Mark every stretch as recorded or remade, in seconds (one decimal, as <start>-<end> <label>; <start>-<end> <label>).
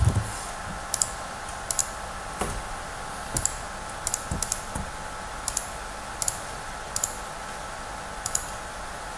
0.0-9.2 recorded